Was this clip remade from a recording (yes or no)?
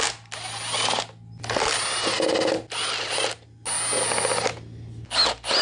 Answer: no